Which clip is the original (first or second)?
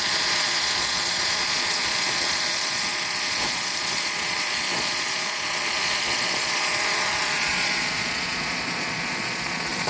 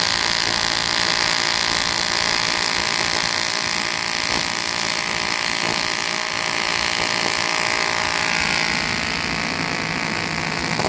second